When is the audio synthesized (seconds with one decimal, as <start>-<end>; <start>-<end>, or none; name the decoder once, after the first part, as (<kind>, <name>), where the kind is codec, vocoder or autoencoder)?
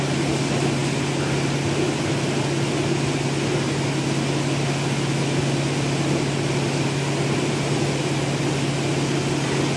none